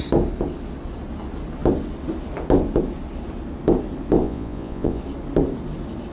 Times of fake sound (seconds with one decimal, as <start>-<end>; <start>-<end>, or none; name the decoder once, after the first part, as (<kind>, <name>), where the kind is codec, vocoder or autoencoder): 4.2-5.0 (vocoder, Vocos)